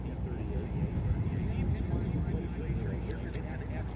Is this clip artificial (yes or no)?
no